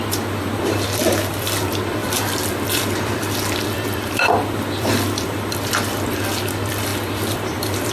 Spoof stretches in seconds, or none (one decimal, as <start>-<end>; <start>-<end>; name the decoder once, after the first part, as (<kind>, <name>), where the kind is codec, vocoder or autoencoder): 0.0-7.9 (vocoder, BigVGAN v2)